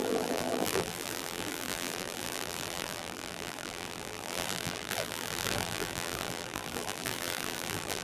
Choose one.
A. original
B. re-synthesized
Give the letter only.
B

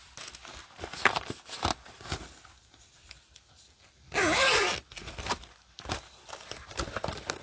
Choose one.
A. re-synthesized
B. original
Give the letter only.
B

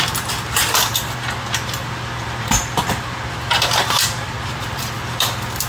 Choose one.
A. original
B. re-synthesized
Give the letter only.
B